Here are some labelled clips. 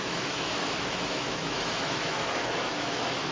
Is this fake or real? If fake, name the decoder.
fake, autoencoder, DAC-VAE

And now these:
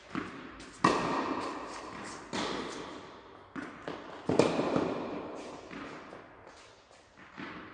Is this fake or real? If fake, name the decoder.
real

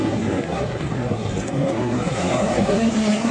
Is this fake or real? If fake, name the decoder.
fake, codec, SNAC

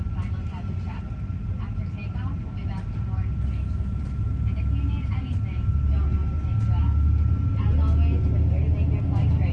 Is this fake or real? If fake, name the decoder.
real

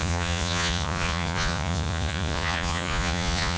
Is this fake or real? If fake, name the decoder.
fake, vocoder, Vocos